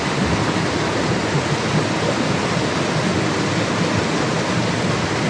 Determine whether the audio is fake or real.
real